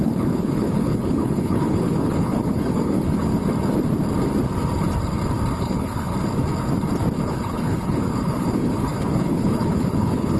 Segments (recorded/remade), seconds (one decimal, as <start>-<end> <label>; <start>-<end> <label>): 0.0-3.3 remade; 3.3-5.6 recorded; 5.6-6.1 remade; 6.1-7.2 recorded; 7.2-10.4 remade